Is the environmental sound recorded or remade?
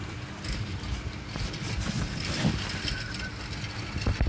recorded